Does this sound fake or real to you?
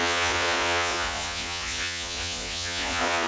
fake